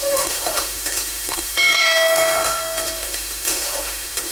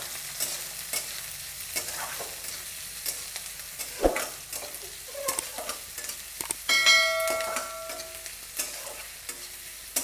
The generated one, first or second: first